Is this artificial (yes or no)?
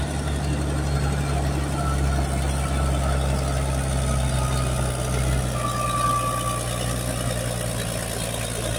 no